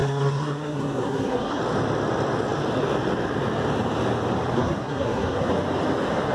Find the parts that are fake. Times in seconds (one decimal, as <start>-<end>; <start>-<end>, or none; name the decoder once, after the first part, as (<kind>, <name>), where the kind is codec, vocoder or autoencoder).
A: 0.0-1.6 (codec, SNAC); 4.5-5.5